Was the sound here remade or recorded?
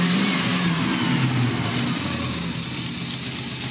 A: recorded